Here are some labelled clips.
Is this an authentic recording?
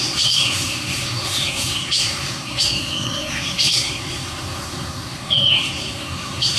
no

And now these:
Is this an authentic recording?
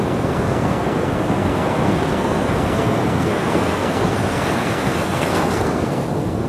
no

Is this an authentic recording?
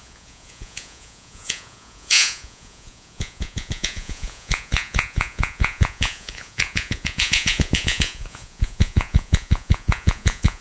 no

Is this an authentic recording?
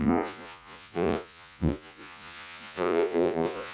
no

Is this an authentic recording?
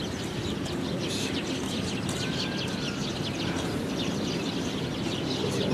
yes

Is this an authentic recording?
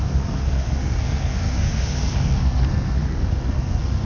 no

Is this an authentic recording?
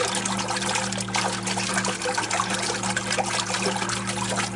yes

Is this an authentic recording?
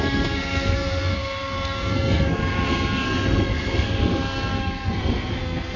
no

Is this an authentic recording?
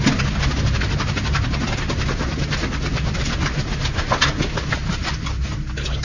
yes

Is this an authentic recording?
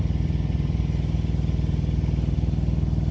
yes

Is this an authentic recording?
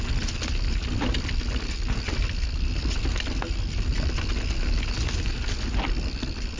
yes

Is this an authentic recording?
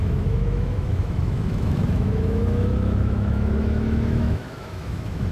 no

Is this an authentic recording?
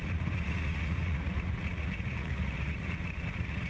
no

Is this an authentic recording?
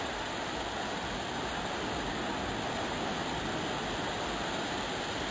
yes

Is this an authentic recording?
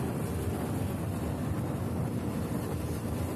yes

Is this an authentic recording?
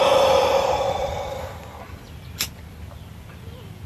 yes